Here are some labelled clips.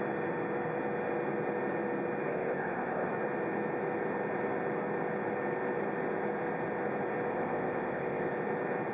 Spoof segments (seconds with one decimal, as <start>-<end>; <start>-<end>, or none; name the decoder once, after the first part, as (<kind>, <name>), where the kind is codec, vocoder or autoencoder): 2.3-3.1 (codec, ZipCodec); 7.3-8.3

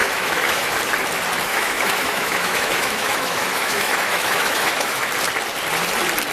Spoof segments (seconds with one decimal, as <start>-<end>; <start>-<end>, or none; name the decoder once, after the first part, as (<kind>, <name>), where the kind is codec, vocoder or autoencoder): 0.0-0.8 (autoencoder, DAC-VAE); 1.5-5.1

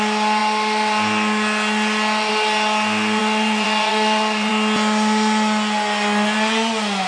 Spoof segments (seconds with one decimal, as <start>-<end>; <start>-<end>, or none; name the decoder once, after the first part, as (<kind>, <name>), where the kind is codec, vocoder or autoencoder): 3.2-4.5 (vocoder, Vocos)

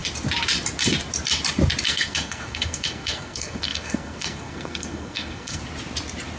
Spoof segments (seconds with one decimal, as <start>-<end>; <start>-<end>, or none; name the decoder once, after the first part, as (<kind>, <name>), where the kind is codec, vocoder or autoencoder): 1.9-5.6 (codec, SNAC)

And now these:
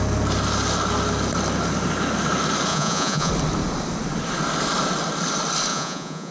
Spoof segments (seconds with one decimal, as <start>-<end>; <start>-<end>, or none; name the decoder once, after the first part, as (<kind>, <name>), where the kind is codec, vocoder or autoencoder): 2.7-3.3 (vocoder, Vocos); 5.7-6.3

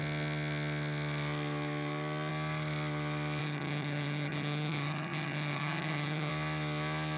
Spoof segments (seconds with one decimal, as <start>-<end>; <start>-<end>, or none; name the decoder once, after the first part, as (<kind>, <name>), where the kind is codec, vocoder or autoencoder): 3.4-6.3 (vocoder, HiFi-GAN)

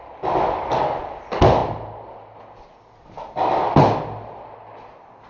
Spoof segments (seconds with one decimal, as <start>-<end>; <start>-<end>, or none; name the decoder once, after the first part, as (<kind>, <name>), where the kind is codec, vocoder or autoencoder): none

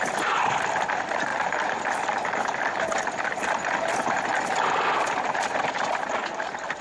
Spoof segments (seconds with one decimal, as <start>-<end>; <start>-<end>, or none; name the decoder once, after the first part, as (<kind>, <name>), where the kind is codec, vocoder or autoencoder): 1.3-5.4 (vocoder, BigVGAN v2)